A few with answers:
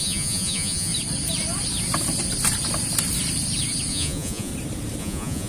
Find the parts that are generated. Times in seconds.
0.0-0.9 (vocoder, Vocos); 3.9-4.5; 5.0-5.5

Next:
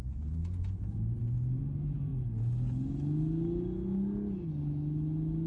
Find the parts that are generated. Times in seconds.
0.0-2.1 (vocoder, Vocos)

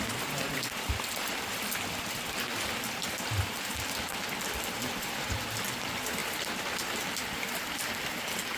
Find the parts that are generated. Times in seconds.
0.5-3.5 (vocoder, BigVGAN v2); 6.2-8.1